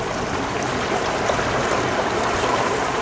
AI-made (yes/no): no